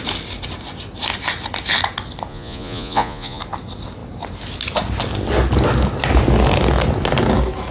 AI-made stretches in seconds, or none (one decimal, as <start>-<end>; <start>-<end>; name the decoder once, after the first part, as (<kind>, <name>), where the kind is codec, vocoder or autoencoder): 2.3-3.4 (vocoder, Vocos)